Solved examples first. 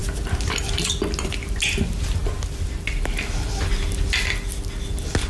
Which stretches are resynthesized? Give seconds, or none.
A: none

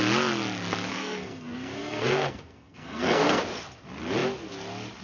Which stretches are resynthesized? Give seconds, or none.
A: 0.9-3.4 (codec, SNAC)

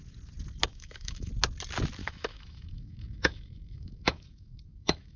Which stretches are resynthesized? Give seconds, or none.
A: 0.7-1.3 (autoencoder, DAC-VAE); 2.0-5.2

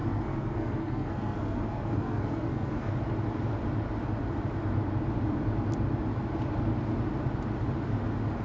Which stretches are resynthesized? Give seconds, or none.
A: 0.0-2.9 (codec, SNAC)

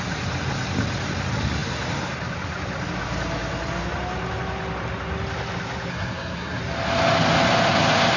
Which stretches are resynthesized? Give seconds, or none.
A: 5.9-6.6 (codec, SNAC)

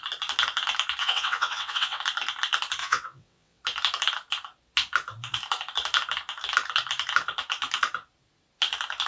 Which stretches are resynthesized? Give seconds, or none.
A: 1.0-2.0 (vocoder, WaveNeXt); 2.8-3.6

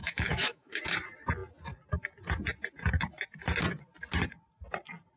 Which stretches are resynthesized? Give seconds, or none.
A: 0.0-0.8 (autoencoder, DAC-VAE)

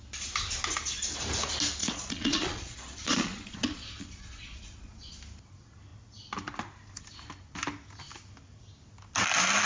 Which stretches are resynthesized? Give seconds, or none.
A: 1.8-5.1 (vocoder, Vocos)